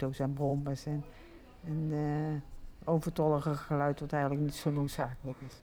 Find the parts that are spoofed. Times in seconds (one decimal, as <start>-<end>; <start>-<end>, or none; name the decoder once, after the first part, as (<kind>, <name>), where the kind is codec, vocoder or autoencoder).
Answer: 4.6-5.6 (codec, DAC)